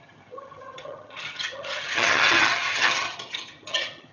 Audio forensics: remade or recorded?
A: remade